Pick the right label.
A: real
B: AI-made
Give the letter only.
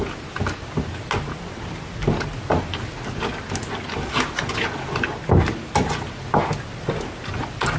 A